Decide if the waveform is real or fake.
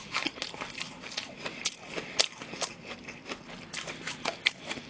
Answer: real